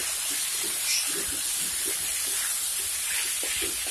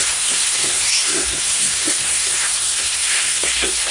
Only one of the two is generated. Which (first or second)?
second